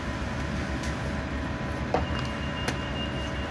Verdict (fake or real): real